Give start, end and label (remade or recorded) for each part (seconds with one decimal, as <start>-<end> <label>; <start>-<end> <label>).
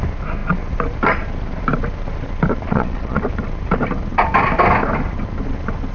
0.0-2.7 recorded; 2.7-3.2 remade; 3.2-5.9 recorded